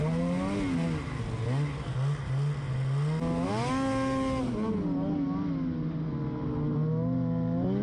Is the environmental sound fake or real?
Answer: real